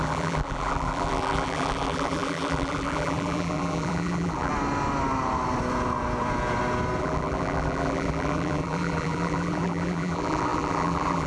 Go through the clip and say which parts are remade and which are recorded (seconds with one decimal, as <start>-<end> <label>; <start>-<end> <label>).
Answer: 0.0-4.5 remade; 4.5-7.0 recorded; 7.0-11.3 remade